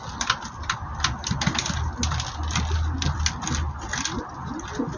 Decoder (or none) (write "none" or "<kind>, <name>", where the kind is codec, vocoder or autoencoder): none